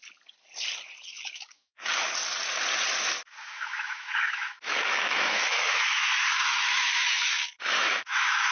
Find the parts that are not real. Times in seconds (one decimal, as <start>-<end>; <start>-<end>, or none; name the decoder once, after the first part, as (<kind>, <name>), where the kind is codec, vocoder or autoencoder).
1.1-1.9 (autoencoder, DAC-VAE); 3.4-8.5

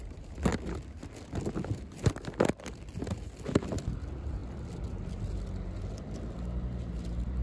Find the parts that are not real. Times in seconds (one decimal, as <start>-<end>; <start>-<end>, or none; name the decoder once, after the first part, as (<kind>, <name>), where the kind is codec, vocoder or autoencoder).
none